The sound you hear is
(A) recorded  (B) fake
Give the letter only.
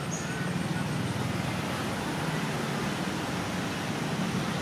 A